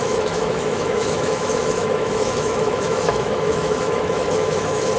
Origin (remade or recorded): remade